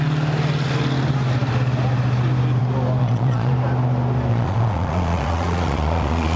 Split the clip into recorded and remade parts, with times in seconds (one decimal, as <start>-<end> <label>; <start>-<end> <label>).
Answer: 0.0-3.0 recorded; 3.0-3.5 remade; 3.5-4.3 recorded; 4.3-6.4 remade

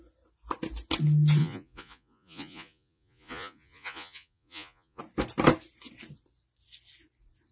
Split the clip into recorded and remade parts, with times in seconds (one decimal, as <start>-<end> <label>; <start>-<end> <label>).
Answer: 0.0-1.4 recorded; 1.4-5.0 remade; 5.0-7.5 recorded

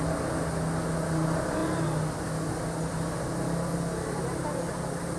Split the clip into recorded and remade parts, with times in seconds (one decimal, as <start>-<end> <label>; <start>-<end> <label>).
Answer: 0.0-5.2 recorded

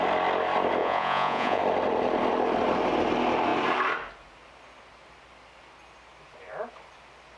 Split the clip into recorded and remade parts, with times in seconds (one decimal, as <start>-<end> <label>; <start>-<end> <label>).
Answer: 0.0-0.8 recorded; 0.8-1.6 remade; 1.6-7.4 recorded

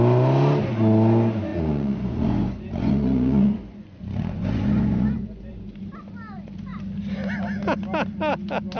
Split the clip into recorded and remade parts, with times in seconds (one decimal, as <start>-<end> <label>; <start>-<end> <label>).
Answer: 0.0-1.5 recorded; 1.5-5.6 remade; 5.6-8.8 recorded

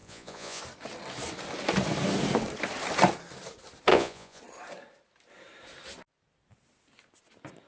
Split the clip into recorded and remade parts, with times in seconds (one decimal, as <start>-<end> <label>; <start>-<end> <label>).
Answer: 0.0-0.6 remade; 0.6-3.9 recorded; 3.9-4.4 remade; 4.4-7.7 recorded